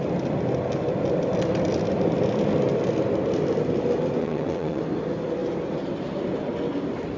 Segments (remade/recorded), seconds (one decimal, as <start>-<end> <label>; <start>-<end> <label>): 0.0-4.2 recorded; 4.2-4.8 remade; 4.8-7.2 recorded